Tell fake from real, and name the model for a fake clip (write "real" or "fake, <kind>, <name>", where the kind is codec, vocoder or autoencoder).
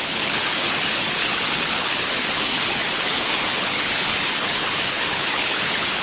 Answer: fake, codec, HILCodec